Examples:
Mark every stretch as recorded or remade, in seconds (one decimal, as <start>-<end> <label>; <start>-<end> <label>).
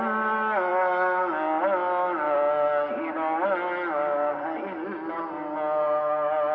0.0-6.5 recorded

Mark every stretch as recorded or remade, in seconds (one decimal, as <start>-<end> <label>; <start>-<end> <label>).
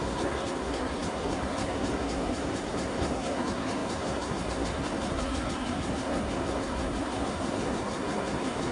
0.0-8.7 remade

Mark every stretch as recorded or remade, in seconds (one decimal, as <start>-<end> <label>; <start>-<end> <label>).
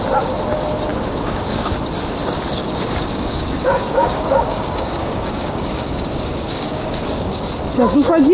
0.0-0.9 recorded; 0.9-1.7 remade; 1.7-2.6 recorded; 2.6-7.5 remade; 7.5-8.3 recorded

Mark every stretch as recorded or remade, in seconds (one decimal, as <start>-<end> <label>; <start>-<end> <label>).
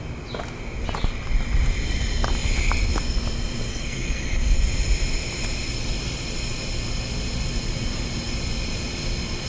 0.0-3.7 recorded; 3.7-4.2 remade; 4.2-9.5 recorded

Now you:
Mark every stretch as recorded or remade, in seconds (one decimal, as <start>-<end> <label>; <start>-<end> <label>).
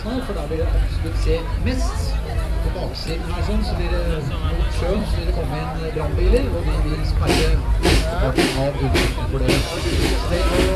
0.0-3.0 recorded; 3.0-5.3 remade; 5.3-10.8 recorded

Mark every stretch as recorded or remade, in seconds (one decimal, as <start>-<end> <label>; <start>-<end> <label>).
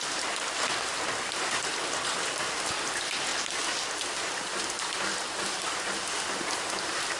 0.0-7.2 recorded